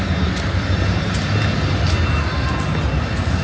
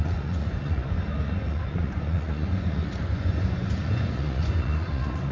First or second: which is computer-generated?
second